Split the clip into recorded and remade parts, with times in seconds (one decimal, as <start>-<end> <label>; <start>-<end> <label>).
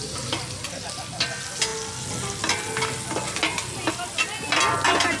0.0-5.2 recorded